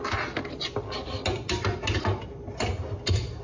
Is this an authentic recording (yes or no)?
yes